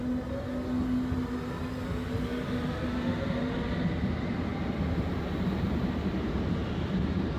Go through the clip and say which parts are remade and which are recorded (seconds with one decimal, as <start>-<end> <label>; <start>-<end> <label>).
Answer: 0.0-7.4 recorded